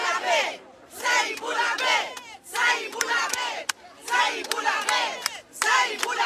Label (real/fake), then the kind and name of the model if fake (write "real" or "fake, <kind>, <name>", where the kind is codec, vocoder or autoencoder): real